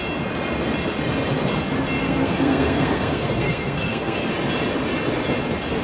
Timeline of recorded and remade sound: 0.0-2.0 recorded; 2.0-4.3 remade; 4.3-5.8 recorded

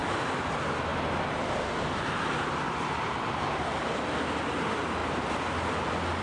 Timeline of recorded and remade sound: 0.0-6.2 recorded

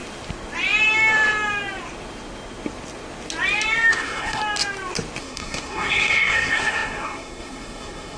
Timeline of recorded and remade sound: 0.0-3.9 recorded; 3.9-4.4 remade; 4.4-5.2 recorded; 5.2-8.2 remade